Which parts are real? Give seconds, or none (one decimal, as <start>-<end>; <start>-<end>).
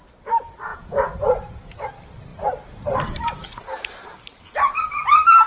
0.0-0.7; 1.9-5.5